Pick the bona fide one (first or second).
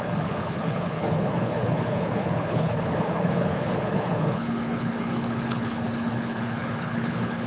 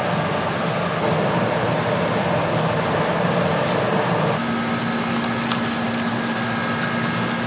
second